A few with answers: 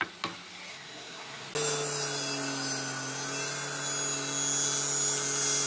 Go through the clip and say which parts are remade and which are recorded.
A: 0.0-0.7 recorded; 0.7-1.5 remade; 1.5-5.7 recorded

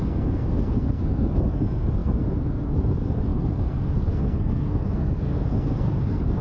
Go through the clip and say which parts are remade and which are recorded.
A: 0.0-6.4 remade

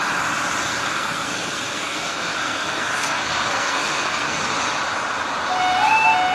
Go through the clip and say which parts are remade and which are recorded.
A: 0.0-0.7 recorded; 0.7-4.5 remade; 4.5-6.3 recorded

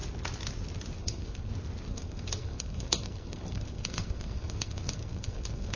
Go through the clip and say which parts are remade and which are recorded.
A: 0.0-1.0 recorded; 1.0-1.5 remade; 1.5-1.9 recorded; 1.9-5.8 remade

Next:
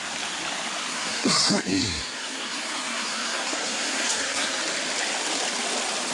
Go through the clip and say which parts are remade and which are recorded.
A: 0.0-0.9 recorded; 0.9-4.6 remade; 4.6-6.1 recorded

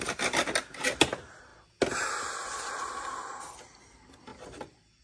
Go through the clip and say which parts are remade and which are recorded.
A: 0.0-5.0 recorded